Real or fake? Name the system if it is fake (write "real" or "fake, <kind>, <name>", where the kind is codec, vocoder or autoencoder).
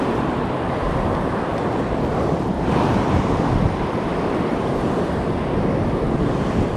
fake, vocoder, BigVGAN v2